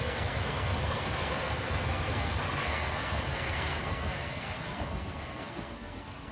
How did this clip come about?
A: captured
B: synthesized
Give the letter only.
B